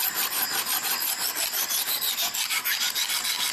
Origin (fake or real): real